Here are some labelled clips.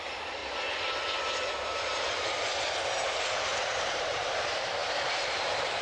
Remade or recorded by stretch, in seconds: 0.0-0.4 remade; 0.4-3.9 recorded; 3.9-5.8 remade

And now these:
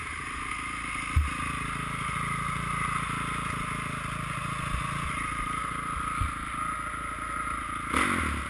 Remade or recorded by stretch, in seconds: 0.0-0.5 remade; 0.5-8.5 recorded